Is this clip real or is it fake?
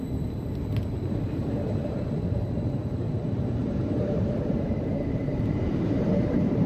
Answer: fake